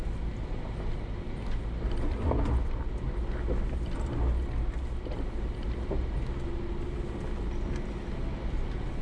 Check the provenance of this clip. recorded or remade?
recorded